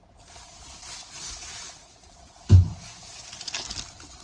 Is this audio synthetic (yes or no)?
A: no